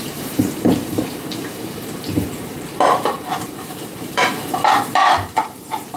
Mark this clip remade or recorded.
remade